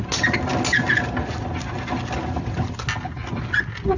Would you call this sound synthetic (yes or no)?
no